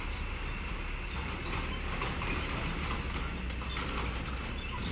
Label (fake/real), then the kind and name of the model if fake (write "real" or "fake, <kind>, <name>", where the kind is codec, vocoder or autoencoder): real